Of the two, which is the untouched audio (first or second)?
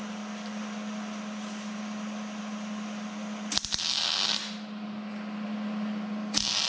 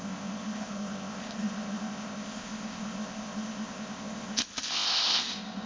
first